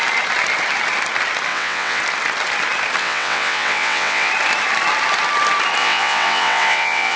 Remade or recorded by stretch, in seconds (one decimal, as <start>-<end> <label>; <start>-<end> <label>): 0.0-1.5 recorded; 1.5-2.0 remade; 2.0-3.0 recorded; 3.0-4.3 remade; 4.3-5.8 recorded; 5.8-7.2 remade